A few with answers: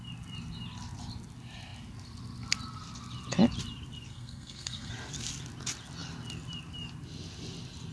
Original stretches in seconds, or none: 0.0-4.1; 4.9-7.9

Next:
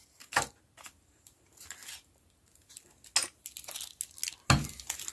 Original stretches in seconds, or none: 0.0-5.1

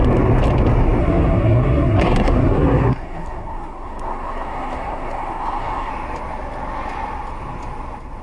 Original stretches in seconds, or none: 0.0-1.0; 5.9-8.2

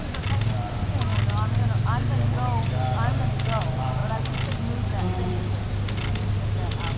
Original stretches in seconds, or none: 0.0-7.0

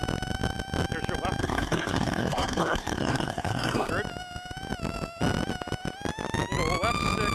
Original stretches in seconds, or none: 0.0-1.4; 3.9-7.3

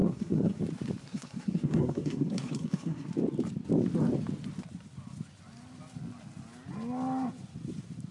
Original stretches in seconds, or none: 0.6-1.0; 3.1-8.1